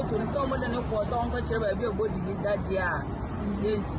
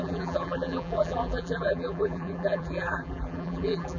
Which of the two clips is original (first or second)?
first